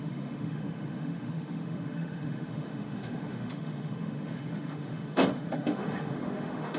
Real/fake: fake